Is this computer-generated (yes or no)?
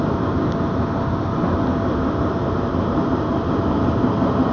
no